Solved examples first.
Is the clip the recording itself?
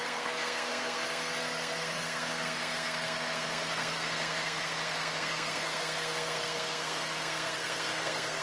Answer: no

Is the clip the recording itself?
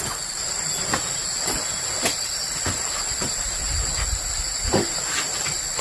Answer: yes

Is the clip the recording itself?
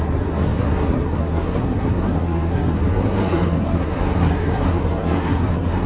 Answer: no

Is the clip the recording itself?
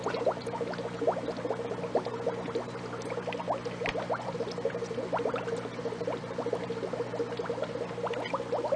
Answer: yes